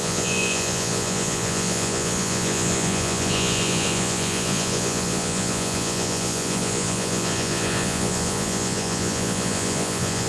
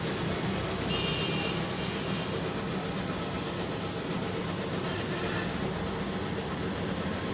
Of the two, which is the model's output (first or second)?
first